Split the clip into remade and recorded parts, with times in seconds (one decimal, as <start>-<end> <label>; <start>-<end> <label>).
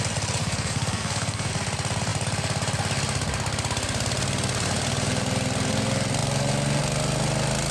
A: 0.0-0.4 recorded; 0.4-1.5 remade; 1.5-7.7 recorded